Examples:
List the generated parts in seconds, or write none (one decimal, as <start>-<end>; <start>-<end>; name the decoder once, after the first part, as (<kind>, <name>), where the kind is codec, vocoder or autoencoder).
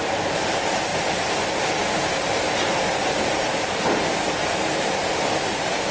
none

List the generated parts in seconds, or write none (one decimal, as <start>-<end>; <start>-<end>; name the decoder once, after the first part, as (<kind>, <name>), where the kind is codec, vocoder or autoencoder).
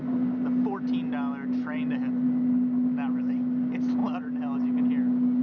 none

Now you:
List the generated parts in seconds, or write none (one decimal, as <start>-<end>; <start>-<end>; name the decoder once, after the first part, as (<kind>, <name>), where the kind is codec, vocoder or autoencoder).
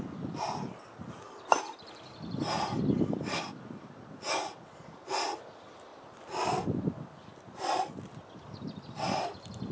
none